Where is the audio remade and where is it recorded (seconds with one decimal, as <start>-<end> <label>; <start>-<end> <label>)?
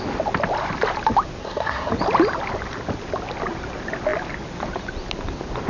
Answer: 0.0-1.4 recorded; 1.4-1.9 remade; 1.9-5.7 recorded